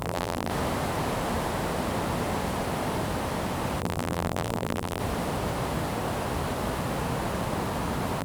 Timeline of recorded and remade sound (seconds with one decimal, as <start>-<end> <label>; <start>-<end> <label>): 0.0-0.5 remade; 0.5-3.8 recorded; 3.8-5.0 remade; 5.0-8.2 recorded